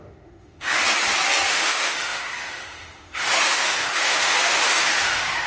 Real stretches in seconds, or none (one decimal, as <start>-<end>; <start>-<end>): 0.8-1.5